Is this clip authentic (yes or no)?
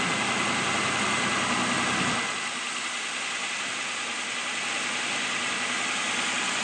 yes